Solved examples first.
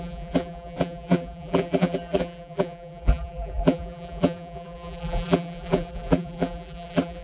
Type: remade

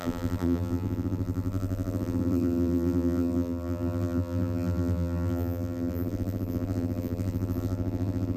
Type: remade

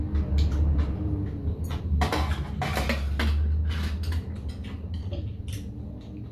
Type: recorded